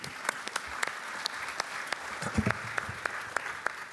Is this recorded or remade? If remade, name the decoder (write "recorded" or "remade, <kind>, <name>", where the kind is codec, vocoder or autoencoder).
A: recorded